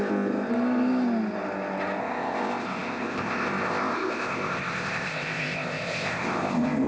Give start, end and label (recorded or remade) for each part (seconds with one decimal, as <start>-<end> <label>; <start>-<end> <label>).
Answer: 0.0-0.5 remade; 0.5-2.0 recorded; 2.0-6.9 remade